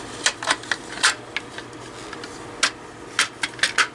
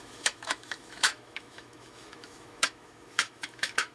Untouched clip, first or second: first